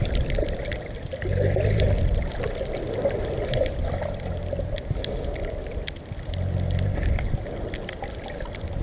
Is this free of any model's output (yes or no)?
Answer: yes